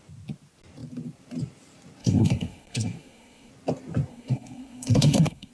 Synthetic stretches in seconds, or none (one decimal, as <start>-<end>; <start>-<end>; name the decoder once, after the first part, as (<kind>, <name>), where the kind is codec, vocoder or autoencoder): 2.0-3.5 (codec, SNAC); 4.1-5.5